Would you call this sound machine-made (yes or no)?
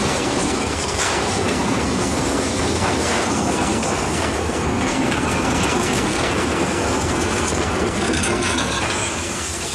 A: yes